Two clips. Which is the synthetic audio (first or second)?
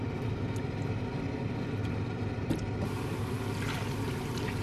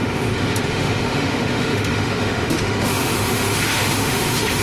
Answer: second